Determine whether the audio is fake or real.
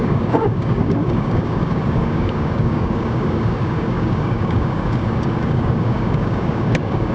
fake